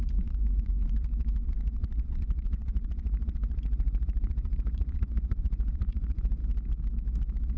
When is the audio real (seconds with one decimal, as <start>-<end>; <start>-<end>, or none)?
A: 6.4-7.6